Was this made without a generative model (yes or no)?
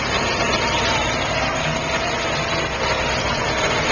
yes